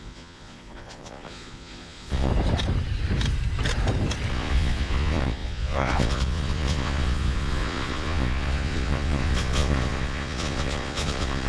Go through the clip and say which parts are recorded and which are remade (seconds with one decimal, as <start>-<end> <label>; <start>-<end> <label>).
0.0-2.3 remade; 2.3-4.3 recorded; 4.3-11.5 remade